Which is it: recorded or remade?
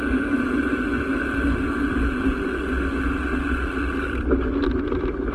recorded